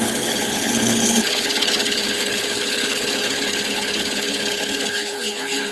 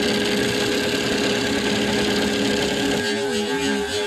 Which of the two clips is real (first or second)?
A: second